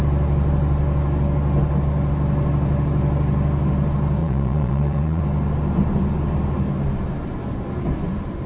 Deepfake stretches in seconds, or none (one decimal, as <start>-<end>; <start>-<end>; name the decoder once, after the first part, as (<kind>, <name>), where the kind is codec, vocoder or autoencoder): 4.2-5.2 (vocoder, Vocos)